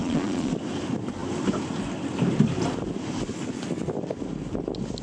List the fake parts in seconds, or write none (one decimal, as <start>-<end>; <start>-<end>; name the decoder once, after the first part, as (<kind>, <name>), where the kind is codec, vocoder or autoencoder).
0.0-0.5 (vocoder, Vocos)